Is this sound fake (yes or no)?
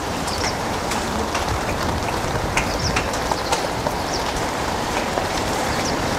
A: yes